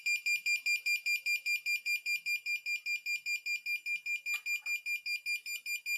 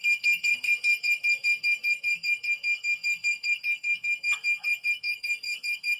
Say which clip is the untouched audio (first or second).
first